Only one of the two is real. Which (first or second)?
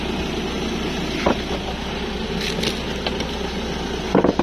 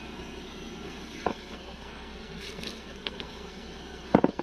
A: first